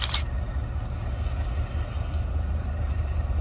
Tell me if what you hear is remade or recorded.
recorded